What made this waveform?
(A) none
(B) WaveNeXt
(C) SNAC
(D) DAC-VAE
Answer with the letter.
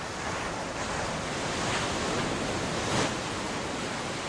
A